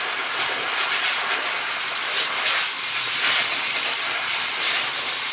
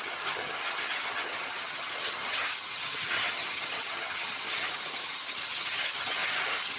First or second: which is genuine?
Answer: first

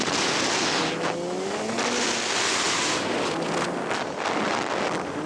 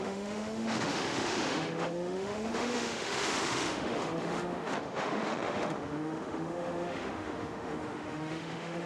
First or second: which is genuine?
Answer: first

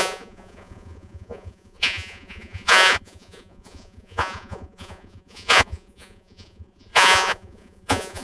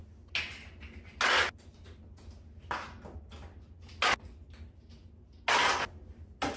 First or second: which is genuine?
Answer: second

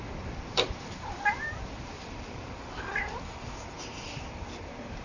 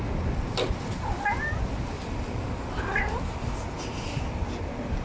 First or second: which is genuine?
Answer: second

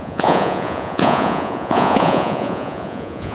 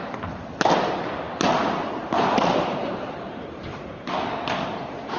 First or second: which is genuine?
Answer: second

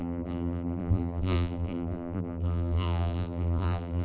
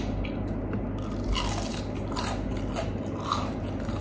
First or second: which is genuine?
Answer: second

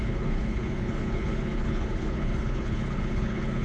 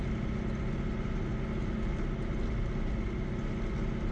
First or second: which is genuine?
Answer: second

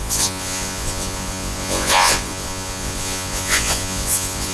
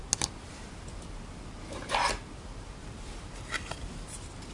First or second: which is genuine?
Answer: second